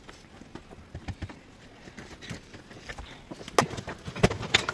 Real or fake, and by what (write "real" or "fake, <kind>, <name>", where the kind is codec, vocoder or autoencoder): real